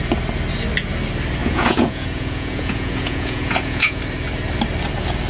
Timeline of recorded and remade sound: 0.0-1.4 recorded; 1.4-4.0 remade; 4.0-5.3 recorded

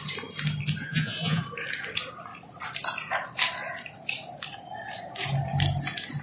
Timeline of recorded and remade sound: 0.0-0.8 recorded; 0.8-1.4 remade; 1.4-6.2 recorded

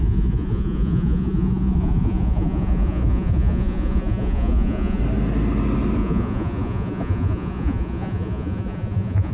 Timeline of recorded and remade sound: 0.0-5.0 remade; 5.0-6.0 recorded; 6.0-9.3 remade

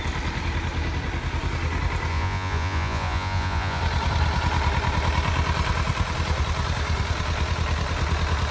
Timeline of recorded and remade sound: 0.0-2.1 recorded; 2.1-3.8 remade; 3.8-8.5 recorded

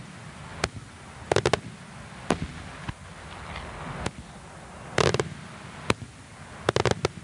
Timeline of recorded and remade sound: 0.0-7.2 recorded

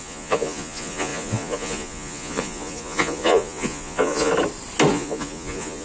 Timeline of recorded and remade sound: 0.0-4.3 remade; 4.3-4.9 recorded; 4.9-5.8 remade

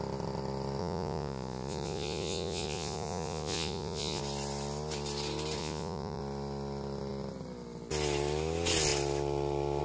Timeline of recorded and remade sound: 0.0-0.8 recorded; 0.8-4.2 remade; 4.2-5.6 recorded; 5.6-6.2 remade; 6.2-9.8 recorded